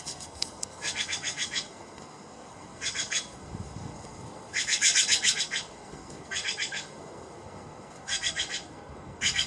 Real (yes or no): no